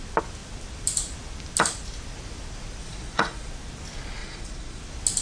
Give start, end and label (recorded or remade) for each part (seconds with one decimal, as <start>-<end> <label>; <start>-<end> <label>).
0.0-2.8 recorded; 2.8-3.5 remade; 3.5-4.2 recorded; 4.2-4.8 remade; 4.8-5.2 recorded